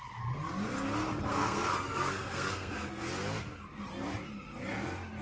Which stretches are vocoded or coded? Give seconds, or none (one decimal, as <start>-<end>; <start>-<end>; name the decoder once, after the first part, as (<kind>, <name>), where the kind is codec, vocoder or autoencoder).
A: 1.3-3.0 (codec, SNAC)

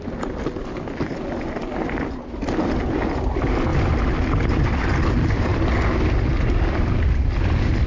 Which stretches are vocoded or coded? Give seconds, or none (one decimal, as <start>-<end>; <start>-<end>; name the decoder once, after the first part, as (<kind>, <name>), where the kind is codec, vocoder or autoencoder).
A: none